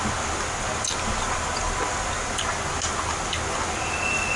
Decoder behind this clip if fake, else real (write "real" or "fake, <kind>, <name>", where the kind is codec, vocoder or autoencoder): real